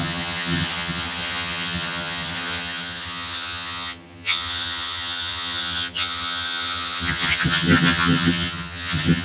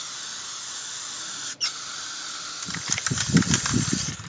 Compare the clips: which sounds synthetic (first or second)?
first